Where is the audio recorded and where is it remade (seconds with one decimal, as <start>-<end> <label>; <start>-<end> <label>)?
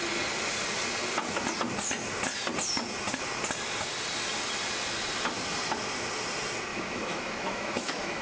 0.0-6.7 recorded; 6.7-8.2 remade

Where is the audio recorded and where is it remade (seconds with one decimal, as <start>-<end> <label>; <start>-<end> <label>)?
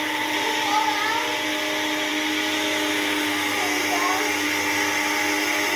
0.0-5.8 recorded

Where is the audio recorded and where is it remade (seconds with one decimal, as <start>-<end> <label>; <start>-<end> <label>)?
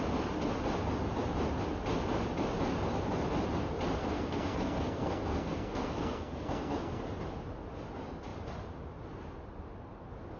0.0-4.0 recorded; 4.0-7.0 remade; 7.0-10.4 recorded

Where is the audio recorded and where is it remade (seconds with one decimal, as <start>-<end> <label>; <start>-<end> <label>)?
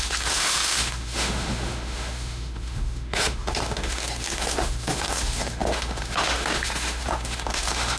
0.0-8.0 remade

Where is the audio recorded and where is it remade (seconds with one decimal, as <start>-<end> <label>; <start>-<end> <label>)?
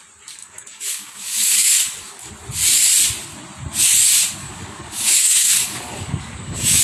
0.0-0.4 recorded; 0.4-2.3 remade; 2.3-4.4 recorded; 4.4-6.8 remade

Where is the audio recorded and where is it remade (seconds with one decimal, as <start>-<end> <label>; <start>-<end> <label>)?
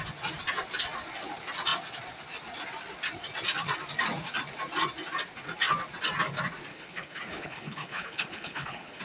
0.0-6.7 recorded; 6.7-9.0 remade